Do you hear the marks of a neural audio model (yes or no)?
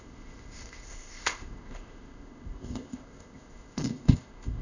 yes